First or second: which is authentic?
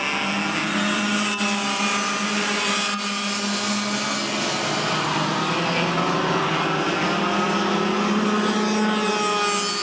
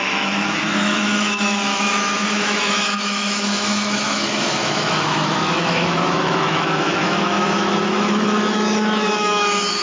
first